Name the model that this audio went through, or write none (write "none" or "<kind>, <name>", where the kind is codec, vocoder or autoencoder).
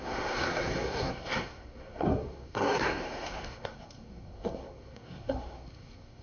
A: codec, SNAC